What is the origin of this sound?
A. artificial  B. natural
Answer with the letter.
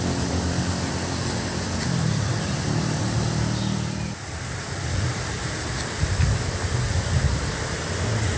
B